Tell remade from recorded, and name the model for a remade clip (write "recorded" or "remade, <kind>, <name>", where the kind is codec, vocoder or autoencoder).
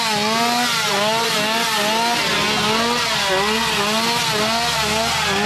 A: recorded